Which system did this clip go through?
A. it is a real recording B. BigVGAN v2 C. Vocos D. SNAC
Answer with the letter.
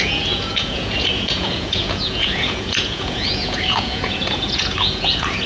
C